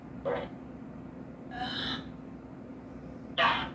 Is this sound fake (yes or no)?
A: no